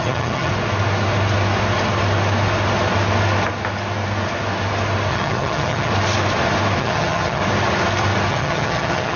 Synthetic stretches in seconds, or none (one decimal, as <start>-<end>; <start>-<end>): 0.0-0.5; 5.1-5.9; 6.8-7.4; 8.3-9.2